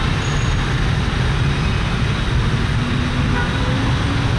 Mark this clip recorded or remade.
recorded